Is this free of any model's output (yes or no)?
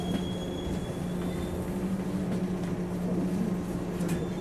yes